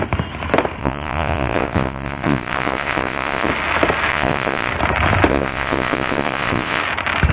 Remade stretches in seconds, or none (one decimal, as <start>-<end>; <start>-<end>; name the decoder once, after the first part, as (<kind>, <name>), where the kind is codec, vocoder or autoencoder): 0.8-3.5 (vocoder, Vocos); 4.1-4.7; 5.3-6.8